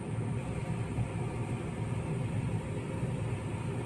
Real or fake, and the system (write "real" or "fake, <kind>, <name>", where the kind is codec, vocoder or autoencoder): real